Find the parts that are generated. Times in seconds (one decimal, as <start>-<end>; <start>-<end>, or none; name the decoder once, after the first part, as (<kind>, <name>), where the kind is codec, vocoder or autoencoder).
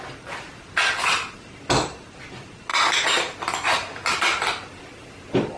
2.7-4.3 (vocoder, BigVGAN v2)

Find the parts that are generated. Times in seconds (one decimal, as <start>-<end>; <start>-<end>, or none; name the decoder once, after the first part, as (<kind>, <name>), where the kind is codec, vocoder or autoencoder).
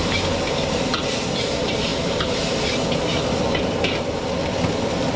none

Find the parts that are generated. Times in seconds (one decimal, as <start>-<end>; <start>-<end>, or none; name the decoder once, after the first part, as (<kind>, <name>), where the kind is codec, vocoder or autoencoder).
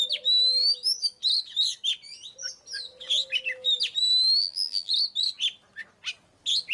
4.4-4.9 (vocoder, BigVGAN v2)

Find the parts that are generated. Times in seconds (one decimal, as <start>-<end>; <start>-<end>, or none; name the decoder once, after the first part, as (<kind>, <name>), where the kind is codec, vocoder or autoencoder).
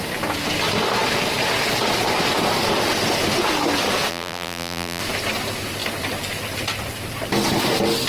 4.1-5.0 (vocoder, BigVGAN v2)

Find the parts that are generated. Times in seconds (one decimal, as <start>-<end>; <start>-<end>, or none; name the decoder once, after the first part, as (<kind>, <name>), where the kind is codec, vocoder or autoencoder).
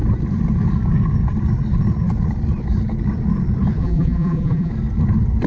3.8-4.7 (vocoder, BigVGAN v2)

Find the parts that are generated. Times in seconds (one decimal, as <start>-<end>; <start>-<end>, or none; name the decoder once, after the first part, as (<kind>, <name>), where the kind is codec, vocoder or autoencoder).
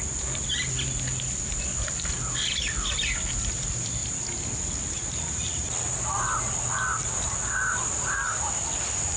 7.0-8.5 (vocoder, BigVGAN v2)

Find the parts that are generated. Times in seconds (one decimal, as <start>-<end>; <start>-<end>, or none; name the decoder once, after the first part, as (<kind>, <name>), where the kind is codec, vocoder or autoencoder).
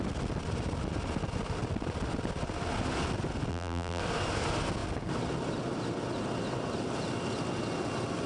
3.5-4.0 (vocoder, BigVGAN v2)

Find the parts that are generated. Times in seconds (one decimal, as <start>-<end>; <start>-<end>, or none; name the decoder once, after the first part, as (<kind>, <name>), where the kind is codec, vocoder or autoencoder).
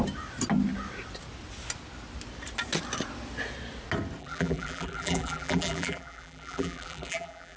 4.2-7.6 (vocoder, BigVGAN v2)